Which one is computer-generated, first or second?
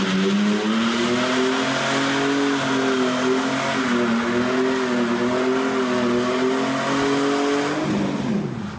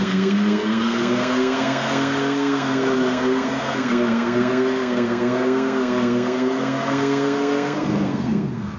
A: second